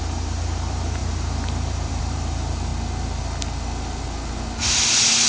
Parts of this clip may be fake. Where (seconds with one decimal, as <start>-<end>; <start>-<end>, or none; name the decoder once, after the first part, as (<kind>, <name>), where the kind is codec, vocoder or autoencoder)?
0.0-2.7 (vocoder, BigVGAN v2)